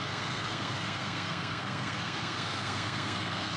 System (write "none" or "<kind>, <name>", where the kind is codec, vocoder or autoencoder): codec, SNAC